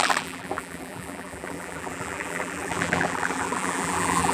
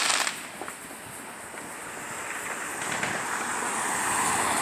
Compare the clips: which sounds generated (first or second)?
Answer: first